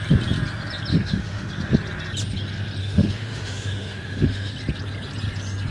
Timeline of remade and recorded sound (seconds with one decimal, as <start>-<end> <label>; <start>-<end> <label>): 0.0-0.9 recorded; 0.9-1.5 remade; 1.5-2.8 recorded; 2.8-4.5 remade; 4.5-5.7 recorded